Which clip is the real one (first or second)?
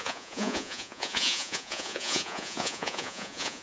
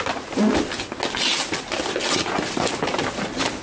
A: second